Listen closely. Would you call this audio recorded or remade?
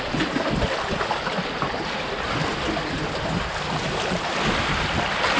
recorded